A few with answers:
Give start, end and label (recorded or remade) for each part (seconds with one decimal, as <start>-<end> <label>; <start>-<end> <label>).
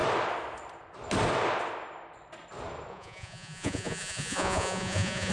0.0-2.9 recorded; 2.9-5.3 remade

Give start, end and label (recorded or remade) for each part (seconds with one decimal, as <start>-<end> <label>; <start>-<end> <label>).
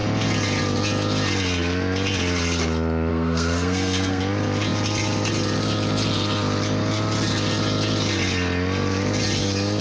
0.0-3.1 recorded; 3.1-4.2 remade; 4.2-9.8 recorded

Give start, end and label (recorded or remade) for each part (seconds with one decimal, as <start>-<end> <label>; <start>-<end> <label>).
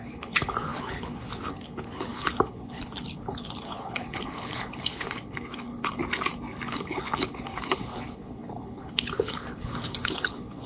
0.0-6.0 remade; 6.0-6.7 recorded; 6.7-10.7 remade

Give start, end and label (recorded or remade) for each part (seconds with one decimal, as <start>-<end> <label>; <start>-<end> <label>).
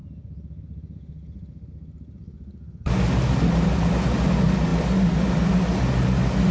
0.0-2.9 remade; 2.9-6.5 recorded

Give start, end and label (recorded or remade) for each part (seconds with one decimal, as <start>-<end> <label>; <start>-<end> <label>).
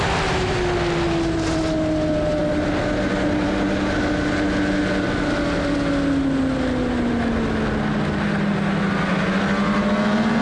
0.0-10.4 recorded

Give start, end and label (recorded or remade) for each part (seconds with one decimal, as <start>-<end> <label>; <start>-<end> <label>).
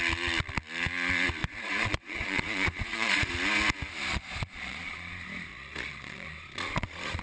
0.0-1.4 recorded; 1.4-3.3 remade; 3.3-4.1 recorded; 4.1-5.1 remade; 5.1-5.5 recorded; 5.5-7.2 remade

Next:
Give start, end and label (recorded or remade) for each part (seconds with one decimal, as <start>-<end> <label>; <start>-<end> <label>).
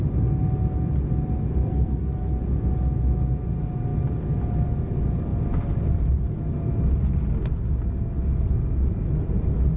0.0-1.6 recorded; 1.6-2.3 remade; 2.3-9.8 recorded